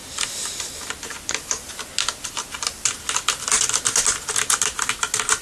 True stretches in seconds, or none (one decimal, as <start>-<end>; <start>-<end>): 0.0-5.4